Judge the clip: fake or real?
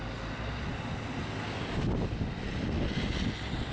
real